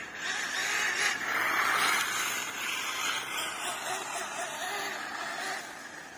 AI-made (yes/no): no